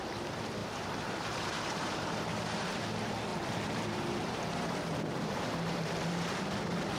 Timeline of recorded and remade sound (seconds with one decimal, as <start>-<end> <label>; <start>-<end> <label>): 0.0-0.6 recorded; 0.6-2.8 remade; 2.8-3.3 recorded; 3.3-5.9 remade; 5.9-7.0 recorded